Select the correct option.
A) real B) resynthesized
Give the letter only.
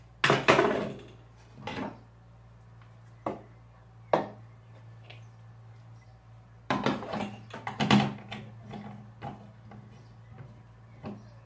A